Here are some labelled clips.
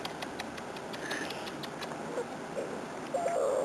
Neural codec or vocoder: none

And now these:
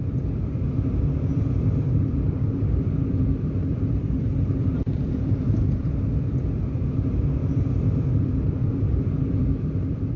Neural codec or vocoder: vocoder, BigVGAN v2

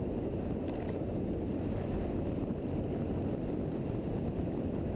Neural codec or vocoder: none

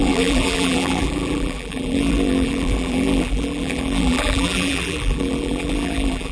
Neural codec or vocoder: vocoder, BigVGAN v2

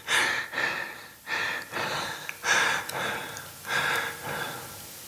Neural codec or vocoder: none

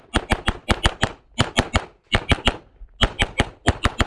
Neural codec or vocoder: none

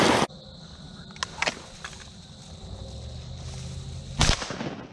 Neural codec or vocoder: none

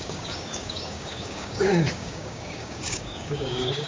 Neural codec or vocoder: codec, DAC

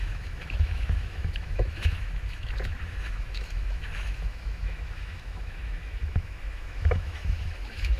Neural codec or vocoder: autoencoder, DAC-VAE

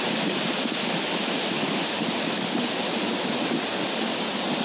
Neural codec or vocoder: none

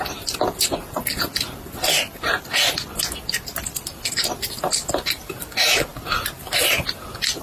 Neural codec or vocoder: none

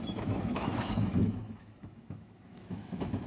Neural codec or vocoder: autoencoder, DAC-VAE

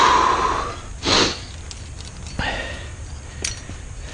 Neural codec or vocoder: none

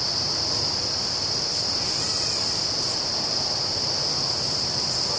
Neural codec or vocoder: none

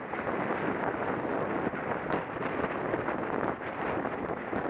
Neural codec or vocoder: none